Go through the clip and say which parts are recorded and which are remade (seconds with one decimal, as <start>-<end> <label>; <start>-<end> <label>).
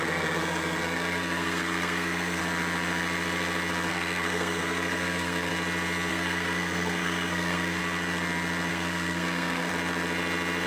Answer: 0.0-2.4 remade; 2.4-3.9 recorded; 3.9-5.5 remade; 5.5-6.1 recorded; 6.1-7.8 remade; 7.8-8.7 recorded; 8.7-9.7 remade; 9.7-10.7 recorded